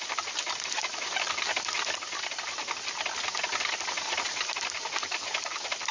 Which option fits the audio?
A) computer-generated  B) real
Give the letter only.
B